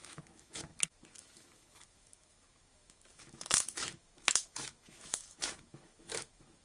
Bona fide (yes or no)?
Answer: no